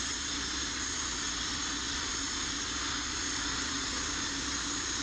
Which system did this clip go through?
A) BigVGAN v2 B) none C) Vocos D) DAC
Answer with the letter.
B